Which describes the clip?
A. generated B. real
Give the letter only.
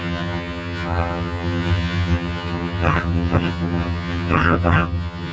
A